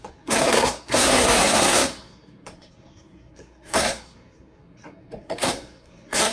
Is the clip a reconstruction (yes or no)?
yes